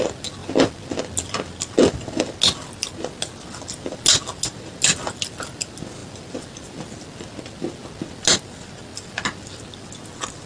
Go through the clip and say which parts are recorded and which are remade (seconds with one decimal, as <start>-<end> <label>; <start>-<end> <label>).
0.0-10.5 recorded